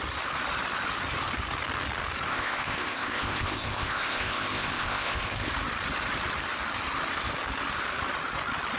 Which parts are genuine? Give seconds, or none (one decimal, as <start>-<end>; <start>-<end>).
0.0-2.3; 5.5-8.8

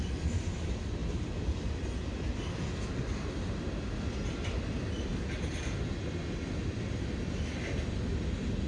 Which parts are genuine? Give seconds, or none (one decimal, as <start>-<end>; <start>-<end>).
0.0-8.7

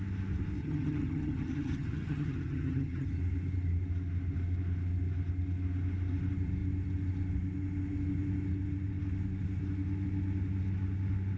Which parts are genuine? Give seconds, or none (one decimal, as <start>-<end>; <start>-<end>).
0.0-0.6; 3.1-11.4

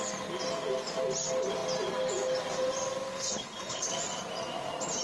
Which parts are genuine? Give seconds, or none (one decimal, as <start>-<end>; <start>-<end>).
0.0-3.1; 3.9-5.0